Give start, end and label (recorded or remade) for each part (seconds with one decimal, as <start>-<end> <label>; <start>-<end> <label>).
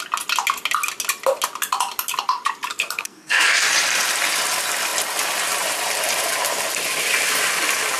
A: 0.0-2.7 recorded; 2.7-3.7 remade; 3.7-8.0 recorded